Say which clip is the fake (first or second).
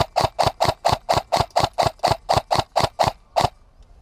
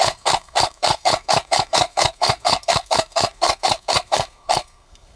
second